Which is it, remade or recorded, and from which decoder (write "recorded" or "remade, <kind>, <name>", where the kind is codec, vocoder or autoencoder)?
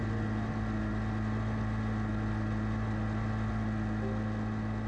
recorded